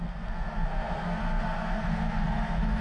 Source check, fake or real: fake